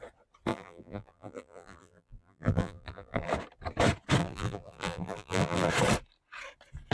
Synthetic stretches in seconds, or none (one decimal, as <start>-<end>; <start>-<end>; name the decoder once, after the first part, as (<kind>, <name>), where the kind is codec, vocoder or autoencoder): 0.5-3.3 (vocoder, BigVGAN v2); 4.2-5.7